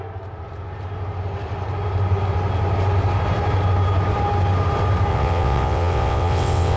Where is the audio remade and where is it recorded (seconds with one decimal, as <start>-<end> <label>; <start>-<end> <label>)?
0.0-5.1 recorded; 5.1-6.8 remade